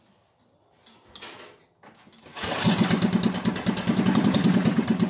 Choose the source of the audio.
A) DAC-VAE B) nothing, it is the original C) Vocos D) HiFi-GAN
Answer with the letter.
B